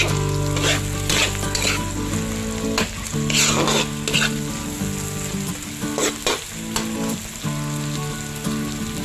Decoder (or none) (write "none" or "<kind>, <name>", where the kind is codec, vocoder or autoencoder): none